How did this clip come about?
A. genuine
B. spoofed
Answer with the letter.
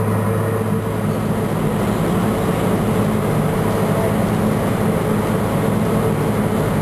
A